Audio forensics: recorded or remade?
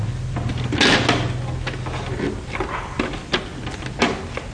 recorded